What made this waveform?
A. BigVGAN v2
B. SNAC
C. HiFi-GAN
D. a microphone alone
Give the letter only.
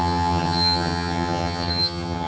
C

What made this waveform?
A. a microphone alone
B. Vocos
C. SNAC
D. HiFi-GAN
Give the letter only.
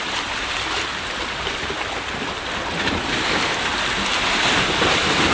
A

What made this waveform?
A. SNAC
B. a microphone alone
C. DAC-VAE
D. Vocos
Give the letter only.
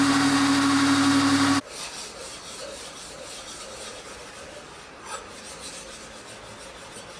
B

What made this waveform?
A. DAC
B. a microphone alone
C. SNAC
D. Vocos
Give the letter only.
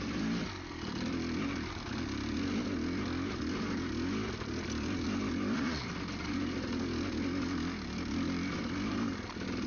B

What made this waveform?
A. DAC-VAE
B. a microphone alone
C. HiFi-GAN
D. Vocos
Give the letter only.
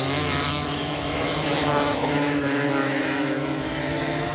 A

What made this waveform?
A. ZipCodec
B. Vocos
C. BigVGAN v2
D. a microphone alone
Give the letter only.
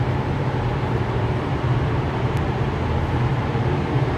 C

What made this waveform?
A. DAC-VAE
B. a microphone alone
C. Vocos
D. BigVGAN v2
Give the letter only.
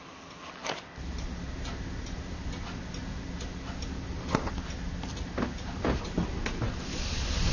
B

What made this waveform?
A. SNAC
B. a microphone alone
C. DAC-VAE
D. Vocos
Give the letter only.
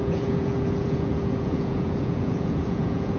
D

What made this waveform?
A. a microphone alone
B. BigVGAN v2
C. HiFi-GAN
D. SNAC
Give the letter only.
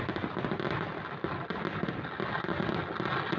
A